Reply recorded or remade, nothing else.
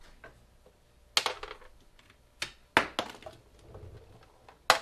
recorded